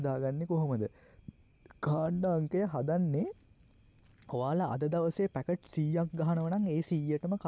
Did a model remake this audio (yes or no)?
no